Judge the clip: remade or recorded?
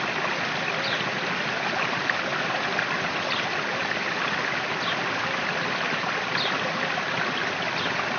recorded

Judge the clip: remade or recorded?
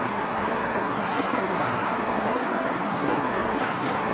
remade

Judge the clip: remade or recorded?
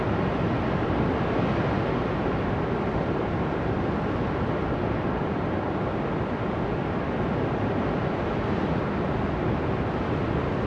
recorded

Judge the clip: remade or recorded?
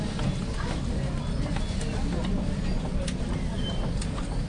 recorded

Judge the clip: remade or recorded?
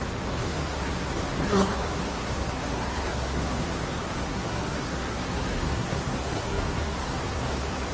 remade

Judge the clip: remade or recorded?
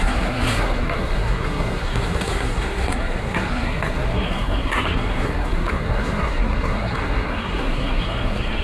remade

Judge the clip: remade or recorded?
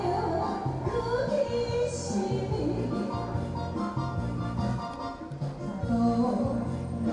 recorded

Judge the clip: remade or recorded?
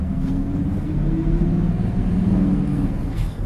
remade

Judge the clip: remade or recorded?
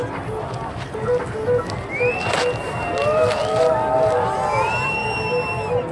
recorded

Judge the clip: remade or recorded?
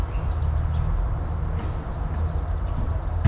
recorded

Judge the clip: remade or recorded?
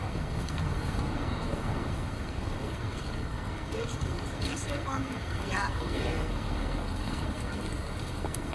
remade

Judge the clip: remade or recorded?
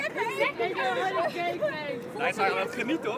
recorded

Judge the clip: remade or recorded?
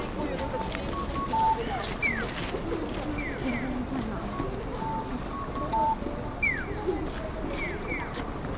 recorded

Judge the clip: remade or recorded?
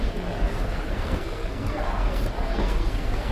remade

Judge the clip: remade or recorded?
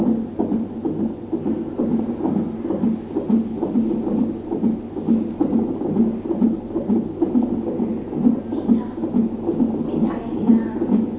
recorded